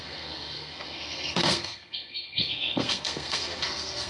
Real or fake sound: fake